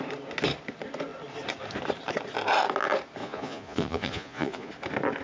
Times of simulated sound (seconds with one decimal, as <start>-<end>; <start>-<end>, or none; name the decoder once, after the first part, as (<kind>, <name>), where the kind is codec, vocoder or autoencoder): 3.2-4.7 (vocoder, Vocos)